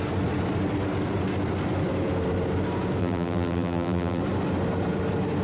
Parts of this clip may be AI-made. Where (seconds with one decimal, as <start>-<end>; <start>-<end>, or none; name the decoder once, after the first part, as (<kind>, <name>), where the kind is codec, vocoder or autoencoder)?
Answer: 3.0-4.2 (vocoder, BigVGAN v2)